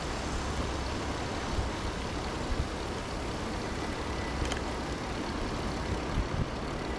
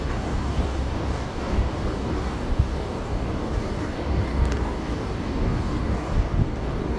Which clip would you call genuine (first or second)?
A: first